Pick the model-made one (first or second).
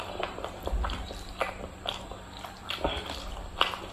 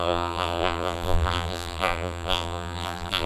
second